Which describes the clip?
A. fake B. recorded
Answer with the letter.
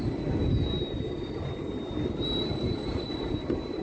B